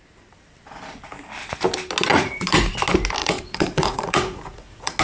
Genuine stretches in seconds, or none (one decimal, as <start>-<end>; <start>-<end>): 0.0-2.1; 2.7-3.2

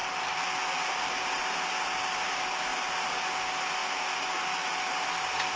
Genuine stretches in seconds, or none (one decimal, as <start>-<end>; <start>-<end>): 0.0-5.6

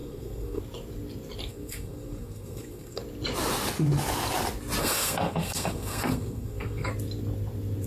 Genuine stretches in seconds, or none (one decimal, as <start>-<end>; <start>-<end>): 0.6-1.5; 3.0-4.8; 6.9-7.9

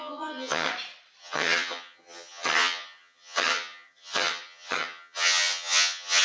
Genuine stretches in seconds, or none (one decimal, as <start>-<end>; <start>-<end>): 0.7-1.2

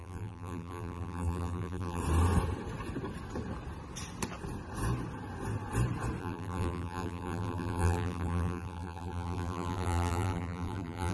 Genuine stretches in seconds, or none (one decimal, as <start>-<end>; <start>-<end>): 2.0-6.2

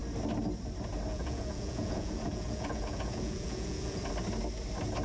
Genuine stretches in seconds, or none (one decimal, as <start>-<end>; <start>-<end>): 0.0-1.1; 4.1-5.0

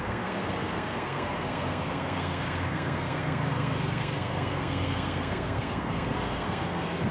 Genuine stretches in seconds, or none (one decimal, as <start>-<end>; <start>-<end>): none

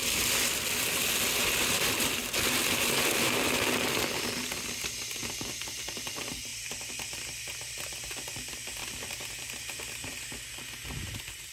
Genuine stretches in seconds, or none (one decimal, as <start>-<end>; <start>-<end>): 0.0-5.2; 5.8-6.5; 7.2-8.8; 10.2-11.5